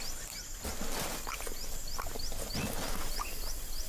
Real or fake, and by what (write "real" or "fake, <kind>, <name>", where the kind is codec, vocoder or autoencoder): real